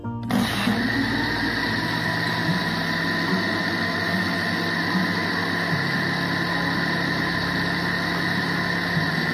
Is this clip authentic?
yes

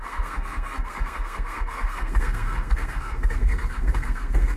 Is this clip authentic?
no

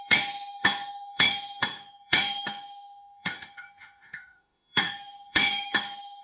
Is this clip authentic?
no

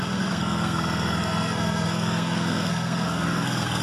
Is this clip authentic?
no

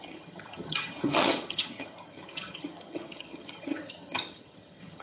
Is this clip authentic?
no